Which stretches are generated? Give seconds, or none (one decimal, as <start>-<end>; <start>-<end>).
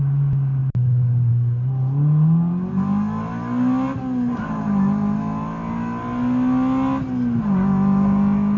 none